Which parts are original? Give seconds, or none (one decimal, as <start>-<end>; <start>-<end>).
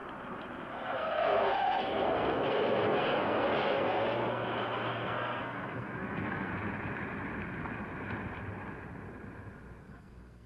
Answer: 0.0-0.7; 6.5-9.8